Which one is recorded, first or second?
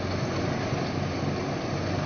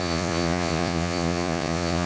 first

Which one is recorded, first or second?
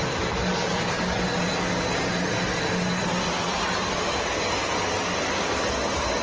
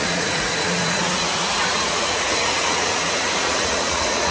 first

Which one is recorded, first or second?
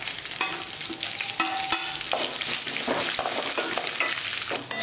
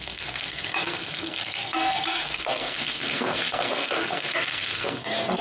first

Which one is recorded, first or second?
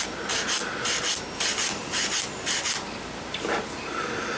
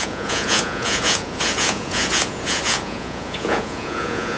first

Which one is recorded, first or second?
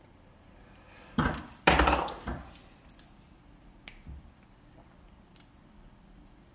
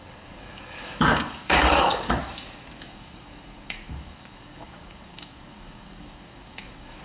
first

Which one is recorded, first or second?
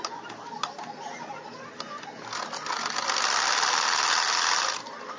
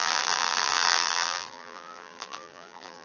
first